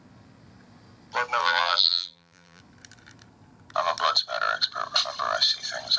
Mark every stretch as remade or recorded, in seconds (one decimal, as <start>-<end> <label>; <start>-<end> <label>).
0.0-1.4 recorded; 1.4-2.6 remade; 2.6-6.0 recorded